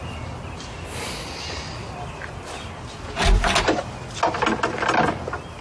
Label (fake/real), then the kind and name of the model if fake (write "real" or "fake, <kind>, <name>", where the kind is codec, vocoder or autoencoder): real